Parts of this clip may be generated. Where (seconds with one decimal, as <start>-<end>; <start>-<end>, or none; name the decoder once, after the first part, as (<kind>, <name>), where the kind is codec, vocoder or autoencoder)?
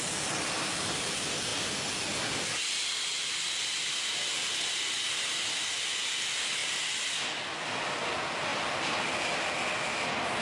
none